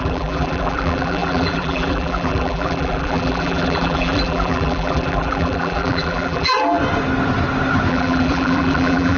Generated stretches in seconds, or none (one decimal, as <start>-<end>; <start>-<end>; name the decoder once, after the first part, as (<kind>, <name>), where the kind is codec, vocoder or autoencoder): 0.0-6.8 (vocoder, BigVGAN v2); 7.9-9.2